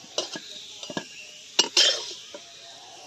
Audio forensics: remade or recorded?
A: recorded